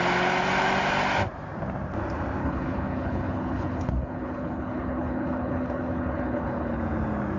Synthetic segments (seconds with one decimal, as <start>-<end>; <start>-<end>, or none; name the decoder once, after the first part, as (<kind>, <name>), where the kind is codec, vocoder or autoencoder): 2.4-6.8 (codec, HILCodec)